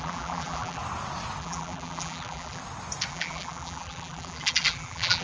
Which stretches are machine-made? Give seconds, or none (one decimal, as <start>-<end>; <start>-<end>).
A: 0.0-0.8; 1.4-2.6; 3.1-5.2